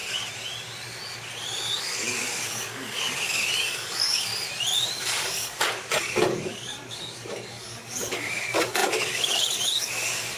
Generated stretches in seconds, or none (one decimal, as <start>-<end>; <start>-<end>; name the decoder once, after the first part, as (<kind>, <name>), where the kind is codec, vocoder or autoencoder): 1.8-4.3 (codec, DAC); 4.9-10.4

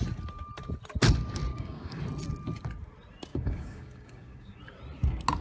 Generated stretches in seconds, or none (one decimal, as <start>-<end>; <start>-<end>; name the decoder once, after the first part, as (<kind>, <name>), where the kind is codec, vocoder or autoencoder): 1.5-2.0 (codec, DAC); 3.3-4.6

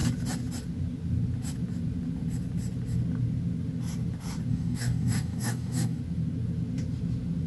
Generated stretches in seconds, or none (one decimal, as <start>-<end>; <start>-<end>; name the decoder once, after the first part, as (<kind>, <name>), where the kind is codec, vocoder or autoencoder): 4.5-6.0 (codec, DAC)

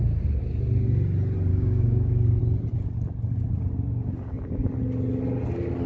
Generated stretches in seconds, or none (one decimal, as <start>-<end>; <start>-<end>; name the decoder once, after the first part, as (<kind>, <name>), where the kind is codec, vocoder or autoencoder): 1.5-2.4 (codec, DAC)

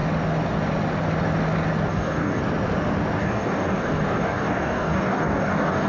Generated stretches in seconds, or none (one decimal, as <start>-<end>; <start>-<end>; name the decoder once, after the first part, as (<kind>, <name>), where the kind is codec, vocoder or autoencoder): 1.9-2.4 (codec, DAC); 3.2-5.9

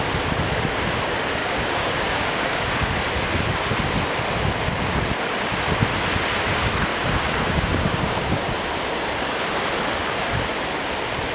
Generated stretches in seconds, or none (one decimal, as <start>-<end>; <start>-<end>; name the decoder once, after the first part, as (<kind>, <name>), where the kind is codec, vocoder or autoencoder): 1.4-2.9 (codec, DAC); 6.9-8.4